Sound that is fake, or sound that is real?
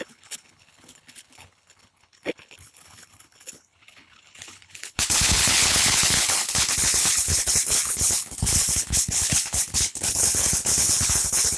fake